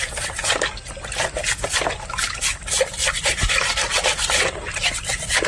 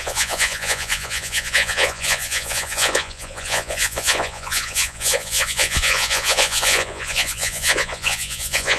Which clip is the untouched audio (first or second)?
first